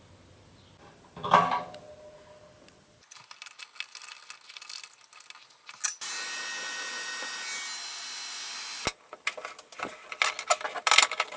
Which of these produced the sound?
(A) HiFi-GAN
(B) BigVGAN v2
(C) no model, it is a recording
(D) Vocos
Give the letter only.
C